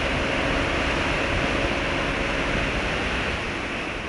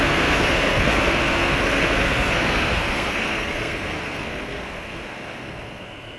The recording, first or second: first